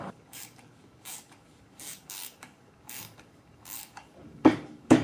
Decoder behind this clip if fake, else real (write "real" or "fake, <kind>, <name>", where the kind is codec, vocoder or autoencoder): fake, codec, DAC